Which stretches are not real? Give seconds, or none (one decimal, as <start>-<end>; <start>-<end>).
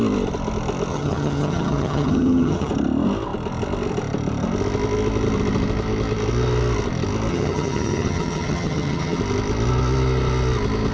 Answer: 0.9-2.7; 7.3-9.2